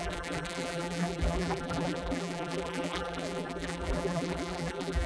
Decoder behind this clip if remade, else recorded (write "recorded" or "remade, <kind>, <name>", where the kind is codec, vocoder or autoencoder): remade, vocoder, BigVGAN v2